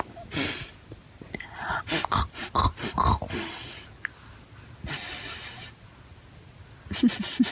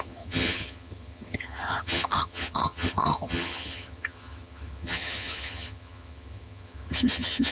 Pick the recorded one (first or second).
first